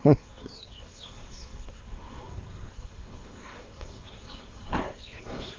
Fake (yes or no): yes